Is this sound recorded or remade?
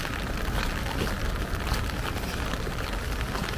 recorded